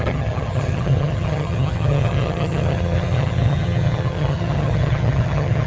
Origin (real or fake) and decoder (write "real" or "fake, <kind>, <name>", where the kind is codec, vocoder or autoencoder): fake, vocoder, HiFi-GAN